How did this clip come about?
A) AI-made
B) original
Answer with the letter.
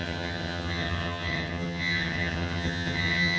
A